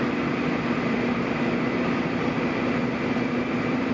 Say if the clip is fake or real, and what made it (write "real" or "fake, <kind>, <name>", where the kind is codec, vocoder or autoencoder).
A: real